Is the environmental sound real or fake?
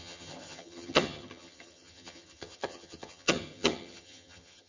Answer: fake